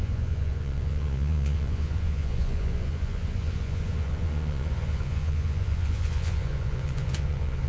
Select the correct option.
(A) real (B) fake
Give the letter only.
B